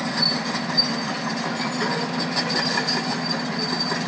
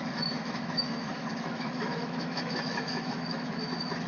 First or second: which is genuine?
first